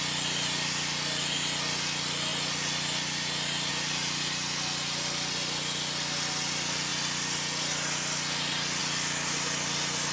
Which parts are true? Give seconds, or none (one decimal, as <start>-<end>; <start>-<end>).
0.0-10.1